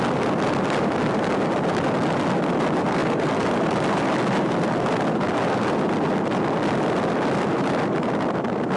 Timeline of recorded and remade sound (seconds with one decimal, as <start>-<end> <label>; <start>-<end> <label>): 0.0-3.0 recorded; 3.0-8.1 remade; 8.1-8.8 recorded